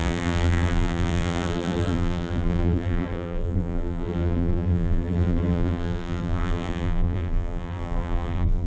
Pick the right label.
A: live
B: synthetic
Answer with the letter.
B